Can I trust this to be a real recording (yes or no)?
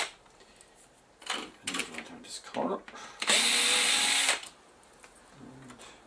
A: yes